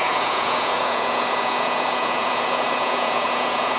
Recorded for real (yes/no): no